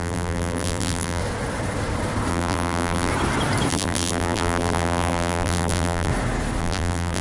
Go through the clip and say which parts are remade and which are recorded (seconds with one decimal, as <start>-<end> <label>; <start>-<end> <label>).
0.0-1.2 remade; 1.2-2.3 recorded; 2.3-3.1 remade; 3.1-3.7 recorded; 3.7-6.1 remade; 6.1-6.6 recorded; 6.6-7.2 remade